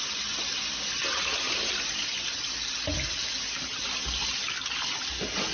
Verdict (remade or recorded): recorded